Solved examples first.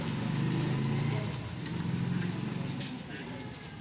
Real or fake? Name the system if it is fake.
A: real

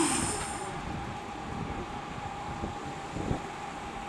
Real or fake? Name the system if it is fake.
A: real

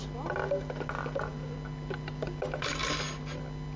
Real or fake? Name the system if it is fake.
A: real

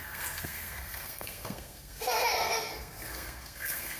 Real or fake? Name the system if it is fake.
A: fake, codec, SNAC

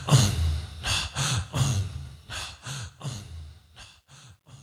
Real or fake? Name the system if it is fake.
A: real